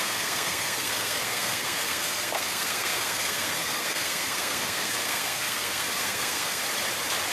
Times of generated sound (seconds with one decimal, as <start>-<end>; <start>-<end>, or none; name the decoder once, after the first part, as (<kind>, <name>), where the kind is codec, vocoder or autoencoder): 0.0-6.6 (codec, SNAC)